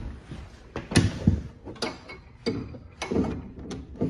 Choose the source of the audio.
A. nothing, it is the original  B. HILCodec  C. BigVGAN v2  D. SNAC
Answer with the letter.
A